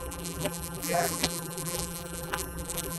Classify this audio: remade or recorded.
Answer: remade